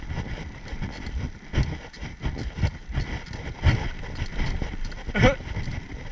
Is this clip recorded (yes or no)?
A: yes